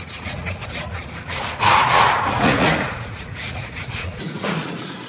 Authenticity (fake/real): fake